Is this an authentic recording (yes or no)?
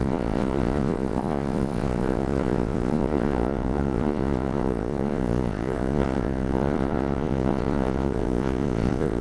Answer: no